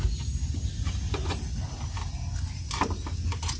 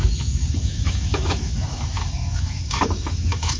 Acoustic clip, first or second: first